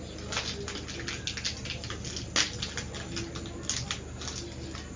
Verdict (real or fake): real